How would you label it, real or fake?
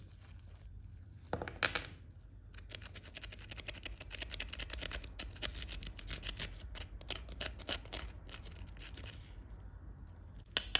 real